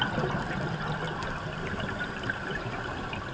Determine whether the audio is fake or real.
real